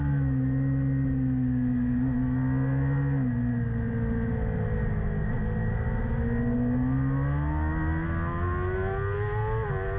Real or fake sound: real